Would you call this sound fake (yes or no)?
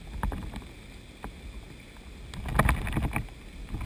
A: no